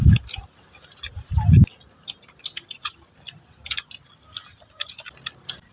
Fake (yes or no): no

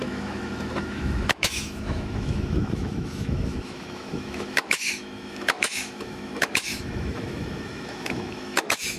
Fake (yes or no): yes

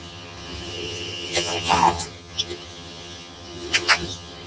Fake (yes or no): yes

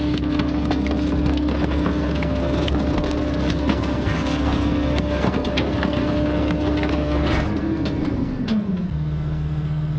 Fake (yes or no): yes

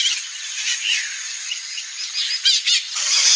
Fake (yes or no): no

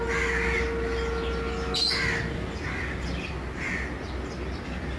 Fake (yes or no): no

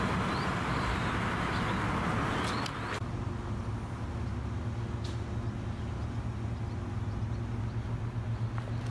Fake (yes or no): no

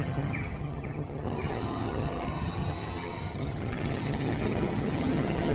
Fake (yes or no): yes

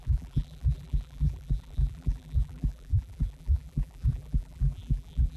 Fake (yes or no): yes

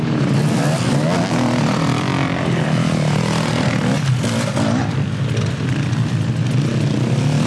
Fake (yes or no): no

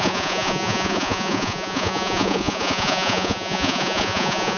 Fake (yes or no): yes